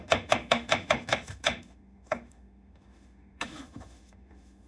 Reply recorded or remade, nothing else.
remade